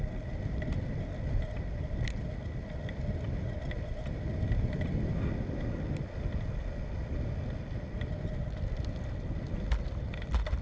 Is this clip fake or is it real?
real